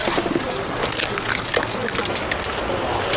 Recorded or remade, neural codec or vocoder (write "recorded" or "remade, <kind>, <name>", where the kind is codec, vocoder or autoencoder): recorded